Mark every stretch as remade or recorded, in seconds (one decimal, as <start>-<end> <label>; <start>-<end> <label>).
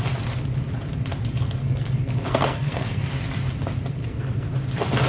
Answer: 0.0-1.6 recorded; 1.6-3.1 remade; 3.1-3.9 recorded; 3.9-4.5 remade; 4.5-5.1 recorded